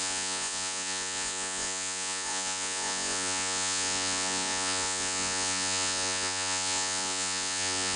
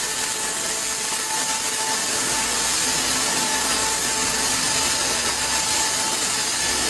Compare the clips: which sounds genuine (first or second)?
second